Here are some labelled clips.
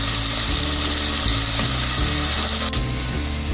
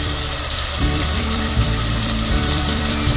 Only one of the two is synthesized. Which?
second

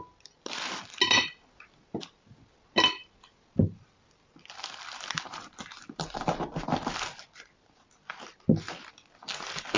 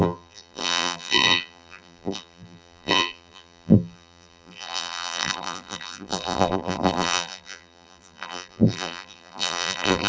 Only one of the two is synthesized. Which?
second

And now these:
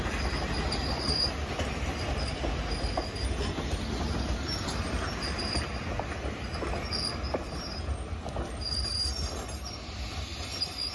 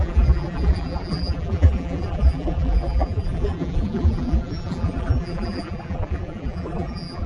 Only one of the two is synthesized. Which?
second